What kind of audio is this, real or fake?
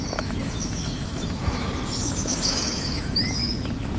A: fake